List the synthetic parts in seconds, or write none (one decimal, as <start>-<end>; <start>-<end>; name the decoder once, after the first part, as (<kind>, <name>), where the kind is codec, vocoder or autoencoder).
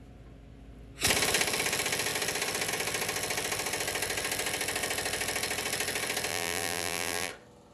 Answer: 6.3-7.3 (vocoder, BigVGAN v2)